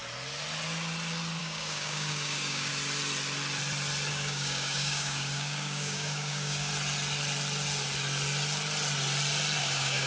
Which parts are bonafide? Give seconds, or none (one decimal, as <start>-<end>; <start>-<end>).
0.0-1.4; 2.7-4.1; 6.7-9.6